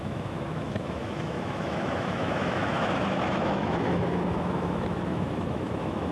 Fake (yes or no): yes